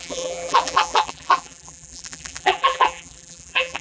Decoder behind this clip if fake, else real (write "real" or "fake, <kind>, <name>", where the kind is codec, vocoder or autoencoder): fake, vocoder, BigVGAN v2